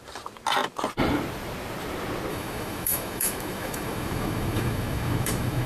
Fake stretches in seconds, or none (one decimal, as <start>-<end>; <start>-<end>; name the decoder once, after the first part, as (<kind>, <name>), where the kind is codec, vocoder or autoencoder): 2.3-5.7 (autoencoder, DAC-VAE)